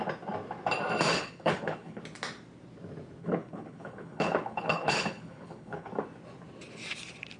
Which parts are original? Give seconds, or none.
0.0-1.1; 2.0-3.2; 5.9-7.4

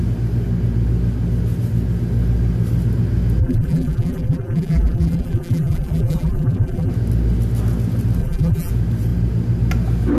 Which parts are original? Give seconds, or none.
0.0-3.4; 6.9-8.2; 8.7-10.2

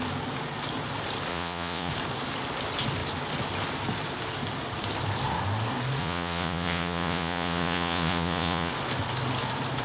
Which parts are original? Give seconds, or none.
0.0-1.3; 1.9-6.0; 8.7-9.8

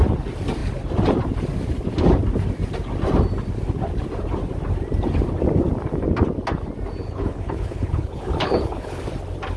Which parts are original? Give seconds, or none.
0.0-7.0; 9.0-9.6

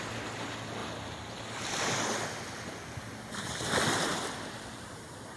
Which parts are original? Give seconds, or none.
0.0-5.4

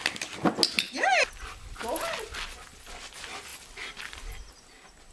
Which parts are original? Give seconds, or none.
0.0-5.1